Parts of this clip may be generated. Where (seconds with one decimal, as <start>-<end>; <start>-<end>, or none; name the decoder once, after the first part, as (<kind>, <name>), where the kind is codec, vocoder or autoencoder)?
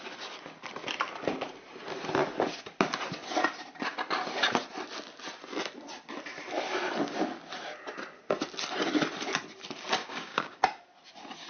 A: 10.0-10.6 (codec, DAC)